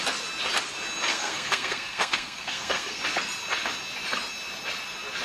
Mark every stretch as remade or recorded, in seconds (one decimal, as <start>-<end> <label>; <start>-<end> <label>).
0.0-1.1 recorded; 1.1-3.0 remade; 3.0-5.2 recorded